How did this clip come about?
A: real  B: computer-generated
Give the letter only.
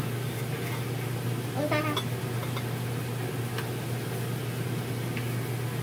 A